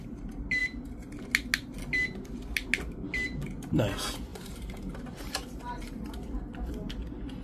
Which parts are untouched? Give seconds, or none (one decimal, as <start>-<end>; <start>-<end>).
0.0-4.3; 6.9-7.4